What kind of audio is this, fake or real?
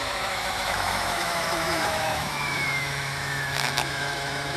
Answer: fake